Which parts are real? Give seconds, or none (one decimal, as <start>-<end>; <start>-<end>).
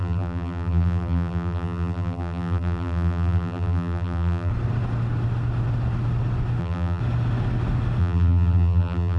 4.5-6.6; 7.0-8.0